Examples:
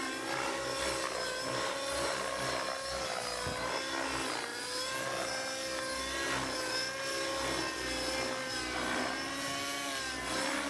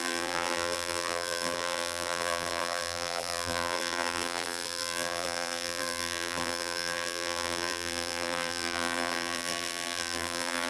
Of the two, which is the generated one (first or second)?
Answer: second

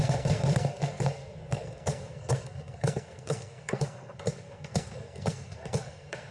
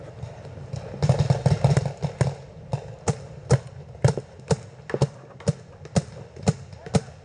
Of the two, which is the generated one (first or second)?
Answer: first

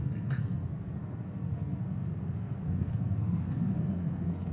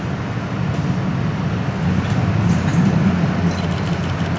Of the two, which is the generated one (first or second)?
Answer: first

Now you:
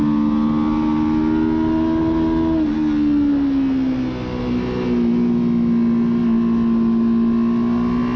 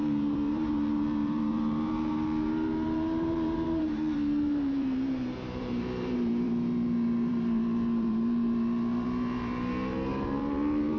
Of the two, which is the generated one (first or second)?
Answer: second